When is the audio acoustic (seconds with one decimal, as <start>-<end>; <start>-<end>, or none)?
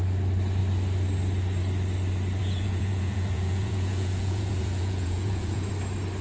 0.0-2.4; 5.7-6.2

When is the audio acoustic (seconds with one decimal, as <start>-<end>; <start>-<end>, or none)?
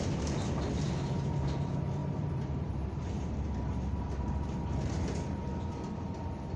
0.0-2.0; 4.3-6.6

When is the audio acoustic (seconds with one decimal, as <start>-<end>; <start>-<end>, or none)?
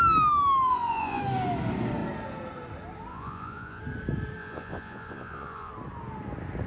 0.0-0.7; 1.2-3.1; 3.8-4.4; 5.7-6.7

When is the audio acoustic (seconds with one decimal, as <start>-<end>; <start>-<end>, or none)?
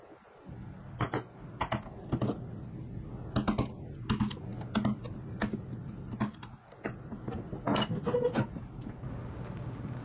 0.0-10.0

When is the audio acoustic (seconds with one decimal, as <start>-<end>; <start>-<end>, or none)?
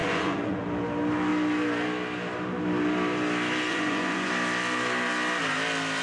0.6-3.7; 4.3-6.0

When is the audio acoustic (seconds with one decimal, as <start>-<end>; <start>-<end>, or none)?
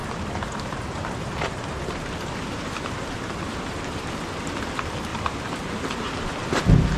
4.2-5.1; 5.8-7.0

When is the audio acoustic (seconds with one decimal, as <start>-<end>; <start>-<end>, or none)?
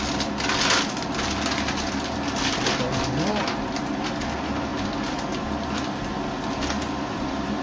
0.0-7.6